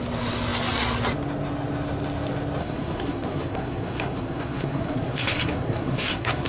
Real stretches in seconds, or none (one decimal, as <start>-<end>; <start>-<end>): 0.0-2.6